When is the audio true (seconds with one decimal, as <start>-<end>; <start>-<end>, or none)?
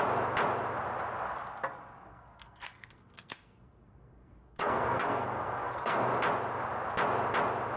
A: 0.0-2.1; 6.1-7.8